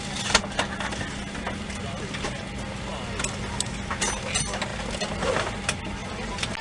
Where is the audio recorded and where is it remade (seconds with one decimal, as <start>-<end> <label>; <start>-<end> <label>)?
0.0-6.6 recorded